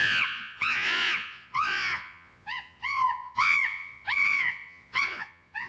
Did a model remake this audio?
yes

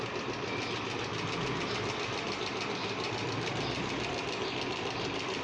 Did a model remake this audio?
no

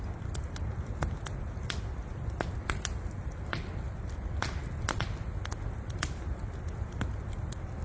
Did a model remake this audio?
no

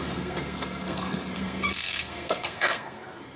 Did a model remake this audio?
yes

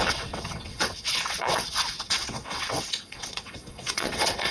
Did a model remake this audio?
yes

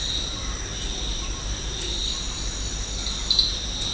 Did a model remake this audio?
no